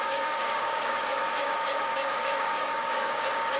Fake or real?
fake